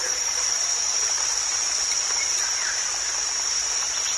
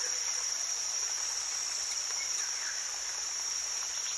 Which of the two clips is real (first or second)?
second